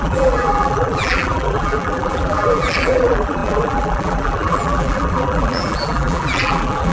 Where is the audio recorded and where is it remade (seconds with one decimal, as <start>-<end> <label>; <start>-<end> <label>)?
0.0-6.9 remade

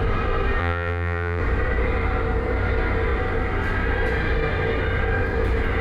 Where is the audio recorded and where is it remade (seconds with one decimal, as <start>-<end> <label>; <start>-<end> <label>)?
0.0-0.6 recorded; 0.6-1.4 remade; 1.4-5.8 recorded

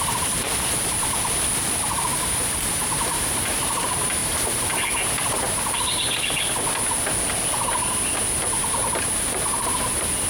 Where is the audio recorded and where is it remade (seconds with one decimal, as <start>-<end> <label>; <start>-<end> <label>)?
0.0-2.1 remade; 2.1-3.0 recorded; 3.0-4.2 remade; 4.2-8.9 recorded; 8.9-10.3 remade

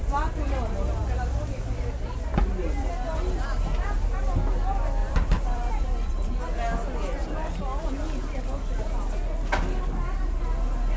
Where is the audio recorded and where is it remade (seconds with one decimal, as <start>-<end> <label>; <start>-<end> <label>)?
0.0-5.0 recorded; 5.0-6.4 remade; 6.4-11.0 recorded